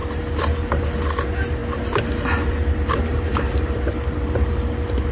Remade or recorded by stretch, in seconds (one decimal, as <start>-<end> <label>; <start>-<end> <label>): 0.0-5.1 recorded